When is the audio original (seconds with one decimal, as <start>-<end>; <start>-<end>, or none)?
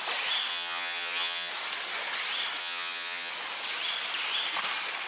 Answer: 0.0-0.5; 1.5-2.6; 3.3-5.1